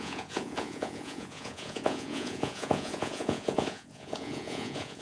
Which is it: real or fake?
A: fake